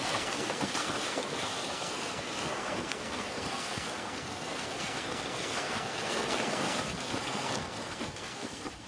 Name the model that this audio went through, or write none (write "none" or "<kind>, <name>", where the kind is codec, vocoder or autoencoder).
codec, SNAC